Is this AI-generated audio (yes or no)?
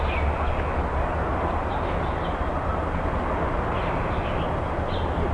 no